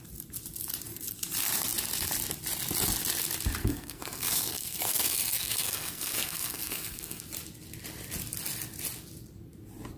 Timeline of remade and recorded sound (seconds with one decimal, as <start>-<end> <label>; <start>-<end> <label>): 0.0-3.6 recorded; 3.6-7.2 remade; 7.2-10.0 recorded